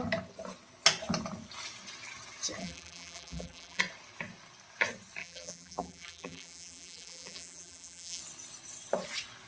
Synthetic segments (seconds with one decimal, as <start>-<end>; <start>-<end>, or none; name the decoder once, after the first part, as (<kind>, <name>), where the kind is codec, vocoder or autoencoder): 2.6-3.8 (vocoder, BigVGAN v2); 5.2-8.2